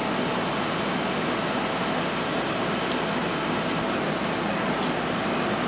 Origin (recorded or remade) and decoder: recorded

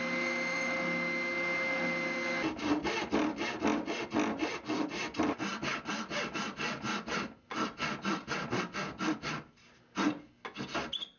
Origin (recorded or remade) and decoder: recorded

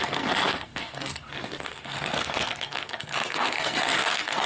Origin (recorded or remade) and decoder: remade, codec, SNAC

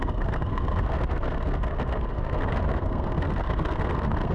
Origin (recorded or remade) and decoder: remade, codec, SNAC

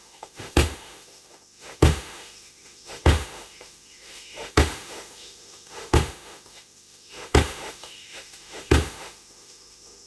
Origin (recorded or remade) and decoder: remade, autoencoder, DAC-VAE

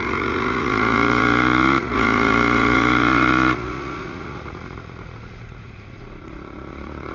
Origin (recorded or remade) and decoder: remade, vocoder, Vocos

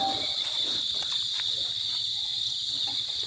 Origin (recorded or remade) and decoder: recorded